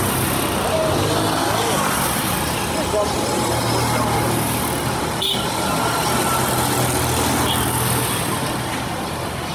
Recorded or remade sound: recorded